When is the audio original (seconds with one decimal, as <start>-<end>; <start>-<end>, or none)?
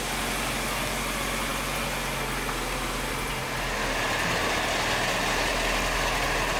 0.0-6.6